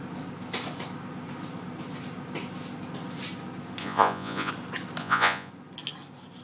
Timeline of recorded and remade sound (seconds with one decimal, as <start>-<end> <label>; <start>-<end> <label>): 0.0-3.8 recorded; 3.8-4.5 remade; 4.5-5.0 recorded; 5.0-5.5 remade; 5.5-6.4 recorded